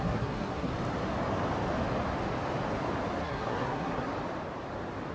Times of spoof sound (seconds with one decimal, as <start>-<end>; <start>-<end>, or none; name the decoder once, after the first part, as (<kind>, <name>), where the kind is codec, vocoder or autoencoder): 0.0-0.7 (codec, SNAC); 3.2-4.1